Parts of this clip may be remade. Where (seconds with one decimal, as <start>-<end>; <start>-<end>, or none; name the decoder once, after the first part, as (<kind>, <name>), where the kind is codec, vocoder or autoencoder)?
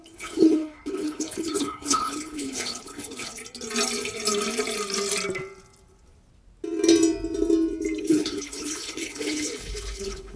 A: 0.0-3.4 (codec, HILCodec); 8.0-10.4